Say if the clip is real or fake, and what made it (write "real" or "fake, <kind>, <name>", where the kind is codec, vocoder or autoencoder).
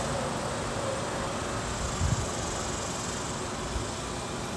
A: real